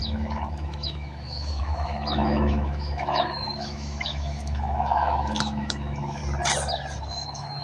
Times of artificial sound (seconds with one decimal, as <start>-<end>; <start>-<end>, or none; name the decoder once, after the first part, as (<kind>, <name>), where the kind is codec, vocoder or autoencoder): 0.0-6.2 (autoencoder, DAC-VAE); 7.1-7.6